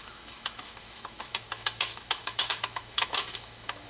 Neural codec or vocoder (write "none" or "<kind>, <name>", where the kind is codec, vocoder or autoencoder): autoencoder, DAC-VAE